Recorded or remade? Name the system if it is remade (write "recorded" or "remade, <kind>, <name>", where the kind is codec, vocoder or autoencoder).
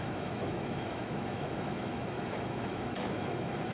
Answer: remade, autoencoder, DAC-VAE